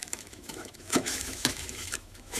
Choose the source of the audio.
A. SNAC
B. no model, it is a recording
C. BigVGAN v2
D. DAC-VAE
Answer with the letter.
D